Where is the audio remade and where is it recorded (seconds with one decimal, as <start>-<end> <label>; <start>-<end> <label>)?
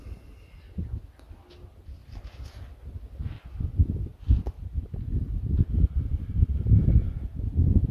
0.0-7.9 recorded